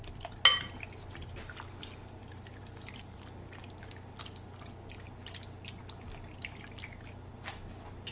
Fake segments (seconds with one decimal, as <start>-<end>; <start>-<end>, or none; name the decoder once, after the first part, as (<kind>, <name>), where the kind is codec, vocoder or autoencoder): 2.2-3.2 (vocoder, BigVGAN v2)